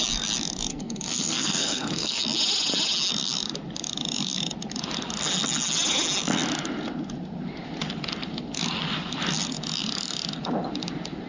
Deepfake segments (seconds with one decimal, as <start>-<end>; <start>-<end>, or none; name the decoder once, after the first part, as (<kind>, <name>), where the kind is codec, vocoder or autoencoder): 0.7-2.2 (codec, SNAC)